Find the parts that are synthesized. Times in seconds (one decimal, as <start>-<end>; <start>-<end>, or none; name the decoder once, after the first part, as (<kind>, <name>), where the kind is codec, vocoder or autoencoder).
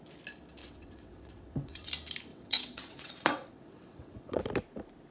0.6-1.9 (vocoder, WaveNeXt); 2.3-4.4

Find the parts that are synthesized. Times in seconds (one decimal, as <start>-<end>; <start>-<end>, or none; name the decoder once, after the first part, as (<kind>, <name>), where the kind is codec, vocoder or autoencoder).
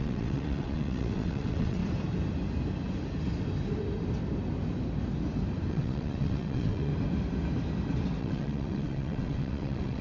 0.0-1.8 (vocoder, WaveNeXt); 5.7-6.9; 8.2-10.0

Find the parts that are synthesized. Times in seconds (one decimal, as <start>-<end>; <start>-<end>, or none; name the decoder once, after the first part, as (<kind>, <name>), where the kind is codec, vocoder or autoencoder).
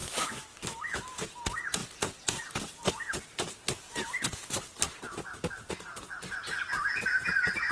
0.0-1.0 (autoencoder, DAC-VAE)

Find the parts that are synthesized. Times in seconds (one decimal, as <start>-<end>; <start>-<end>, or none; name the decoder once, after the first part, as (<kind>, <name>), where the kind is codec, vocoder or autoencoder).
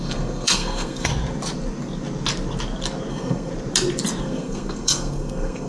0.0-1.1 (codec, SNAC); 3.1-3.5; 4.2-5.7